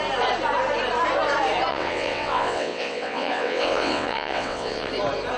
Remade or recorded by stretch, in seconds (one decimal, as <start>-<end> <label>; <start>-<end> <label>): 0.0-1.7 recorded; 1.7-4.9 remade; 4.9-5.4 recorded